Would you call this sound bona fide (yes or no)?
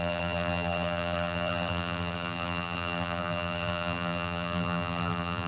no